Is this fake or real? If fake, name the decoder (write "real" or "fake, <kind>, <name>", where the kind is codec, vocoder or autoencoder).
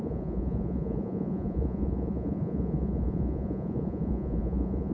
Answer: fake, vocoder, Vocos